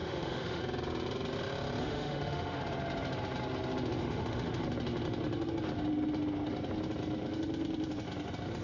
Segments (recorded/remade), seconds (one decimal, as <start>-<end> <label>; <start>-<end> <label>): 0.0-0.6 remade; 0.6-1.8 recorded; 1.8-2.6 remade; 2.6-4.0 recorded; 4.0-4.6 remade; 4.6-8.6 recorded